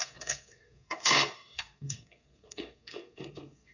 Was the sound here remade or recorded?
remade